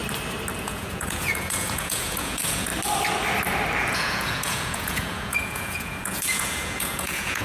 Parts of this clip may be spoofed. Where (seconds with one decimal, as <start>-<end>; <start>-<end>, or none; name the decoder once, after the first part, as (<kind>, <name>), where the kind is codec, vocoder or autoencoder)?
0.6-2.7 (vocoder, Vocos); 3.8-7.4